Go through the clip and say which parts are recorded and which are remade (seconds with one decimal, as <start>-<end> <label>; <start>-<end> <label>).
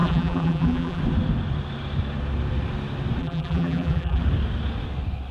0.0-1.0 remade; 1.0-3.2 recorded; 3.2-4.2 remade; 4.2-5.3 recorded